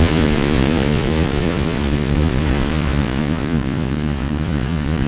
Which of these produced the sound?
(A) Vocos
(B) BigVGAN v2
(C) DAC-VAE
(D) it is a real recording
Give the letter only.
A